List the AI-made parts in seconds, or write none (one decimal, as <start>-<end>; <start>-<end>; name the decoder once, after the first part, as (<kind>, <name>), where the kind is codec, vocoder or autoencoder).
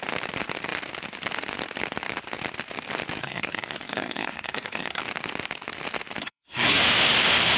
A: 3.2-5.0 (codec, SNAC); 6.2-6.8